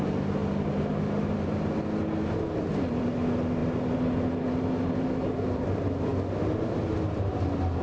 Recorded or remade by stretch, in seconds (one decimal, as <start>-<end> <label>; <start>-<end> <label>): 0.0-7.8 recorded